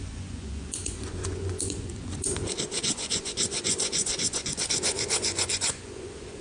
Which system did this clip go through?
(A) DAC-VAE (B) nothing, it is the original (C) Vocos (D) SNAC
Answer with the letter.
C